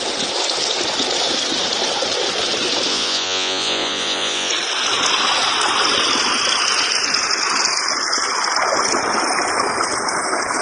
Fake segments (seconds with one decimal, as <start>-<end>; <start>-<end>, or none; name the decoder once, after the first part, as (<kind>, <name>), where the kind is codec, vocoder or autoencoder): 2.9-4.5 (vocoder, Vocos)